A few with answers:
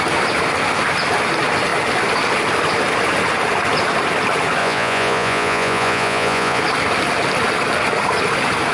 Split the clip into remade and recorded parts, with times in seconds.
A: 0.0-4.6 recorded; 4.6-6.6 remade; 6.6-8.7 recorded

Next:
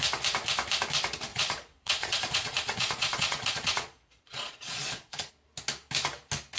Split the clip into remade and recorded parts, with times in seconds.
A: 0.0-1.3 recorded; 1.3-5.3 remade; 5.3-6.6 recorded

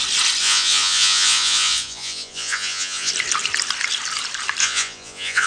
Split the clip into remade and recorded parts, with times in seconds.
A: 0.0-0.4 recorded; 0.4-3.1 remade; 3.1-4.6 recorded; 4.6-5.5 remade

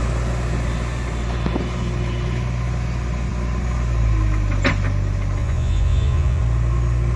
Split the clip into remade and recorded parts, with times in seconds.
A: 0.0-5.4 recorded; 5.4-6.4 remade; 6.4-7.2 recorded